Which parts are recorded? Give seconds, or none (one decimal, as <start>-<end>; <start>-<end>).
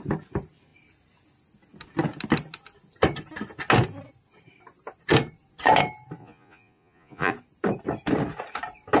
0.0-6.2; 7.3-9.0